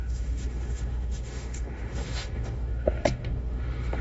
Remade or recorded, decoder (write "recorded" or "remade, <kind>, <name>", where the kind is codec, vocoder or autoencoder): remade, autoencoder, DAC-VAE